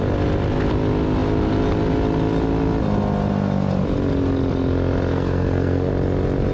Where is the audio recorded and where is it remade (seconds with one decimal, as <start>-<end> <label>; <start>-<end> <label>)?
0.0-5.1 recorded; 5.1-5.9 remade; 5.9-6.5 recorded